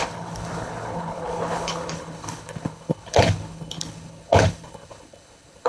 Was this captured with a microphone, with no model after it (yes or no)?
no